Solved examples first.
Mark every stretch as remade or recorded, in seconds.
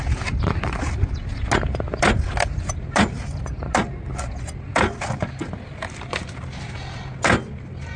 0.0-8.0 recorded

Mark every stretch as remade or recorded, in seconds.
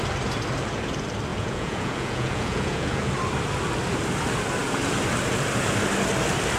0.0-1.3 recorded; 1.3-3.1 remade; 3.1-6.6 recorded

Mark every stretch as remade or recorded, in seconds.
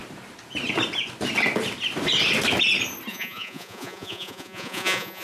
0.0-3.1 recorded; 3.1-5.2 remade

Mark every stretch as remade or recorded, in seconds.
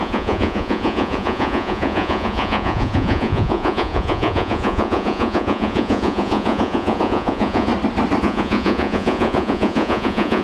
0.0-7.7 remade; 7.7-8.2 recorded; 8.2-10.4 remade